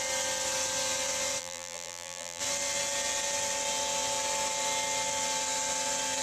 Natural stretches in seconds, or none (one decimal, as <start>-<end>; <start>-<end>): 0.0-1.4; 2.4-6.2